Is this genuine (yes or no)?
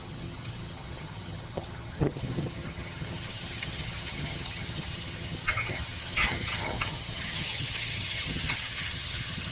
no